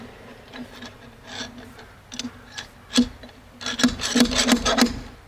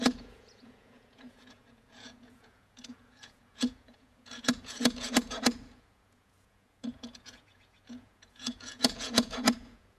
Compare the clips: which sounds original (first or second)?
first